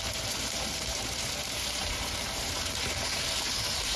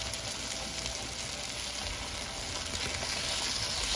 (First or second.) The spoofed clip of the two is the first